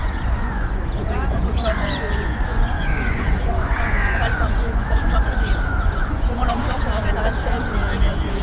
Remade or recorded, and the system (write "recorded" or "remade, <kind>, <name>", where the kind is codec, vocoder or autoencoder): remade, vocoder, Vocos